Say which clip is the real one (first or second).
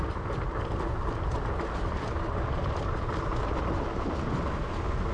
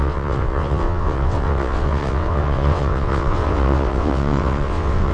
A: first